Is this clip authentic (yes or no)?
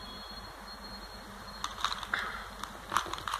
yes